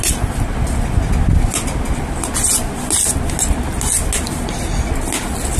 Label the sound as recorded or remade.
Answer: recorded